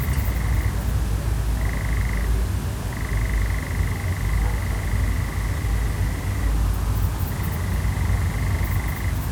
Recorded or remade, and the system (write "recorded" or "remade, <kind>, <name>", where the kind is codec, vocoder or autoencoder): recorded